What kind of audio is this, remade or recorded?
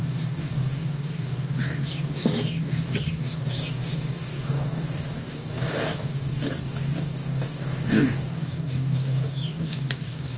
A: remade